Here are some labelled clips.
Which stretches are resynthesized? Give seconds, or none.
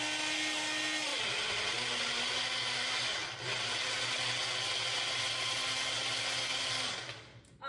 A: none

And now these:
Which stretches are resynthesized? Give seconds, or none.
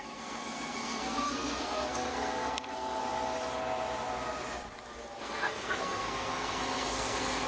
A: 0.0-3.0 (codec, SNAC); 5.2-7.5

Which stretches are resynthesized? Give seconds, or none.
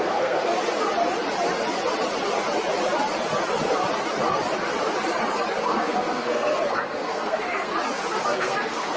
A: 0.0-0.5 (codec, SNAC); 5.6-7.7; 8.2-9.0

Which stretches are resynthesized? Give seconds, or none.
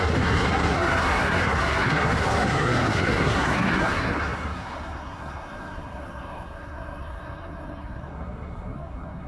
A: 0.0-9.3 (codec, SNAC)